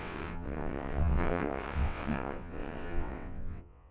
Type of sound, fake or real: fake